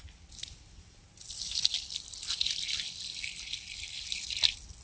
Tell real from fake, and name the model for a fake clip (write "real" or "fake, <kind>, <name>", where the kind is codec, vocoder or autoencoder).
real